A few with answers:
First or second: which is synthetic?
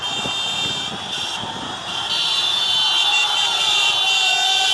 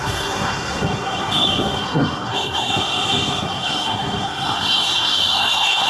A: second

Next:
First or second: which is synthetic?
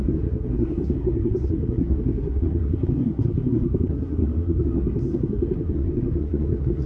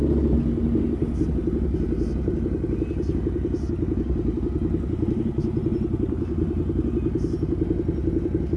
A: first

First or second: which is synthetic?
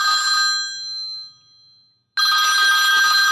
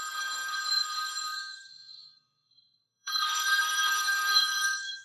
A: second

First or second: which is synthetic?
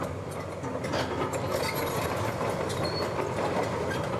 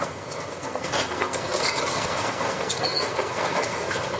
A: second